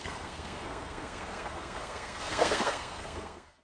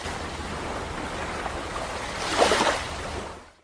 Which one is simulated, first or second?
first